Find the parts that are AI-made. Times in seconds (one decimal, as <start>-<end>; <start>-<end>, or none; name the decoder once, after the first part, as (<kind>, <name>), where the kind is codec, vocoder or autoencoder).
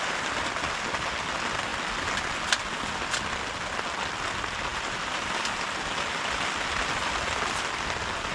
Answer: none